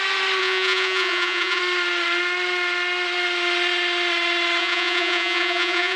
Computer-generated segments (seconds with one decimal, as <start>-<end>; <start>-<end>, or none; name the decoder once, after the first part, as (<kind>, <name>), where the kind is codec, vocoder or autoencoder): 0.4-1.6 (vocoder, Vocos); 4.6-6.0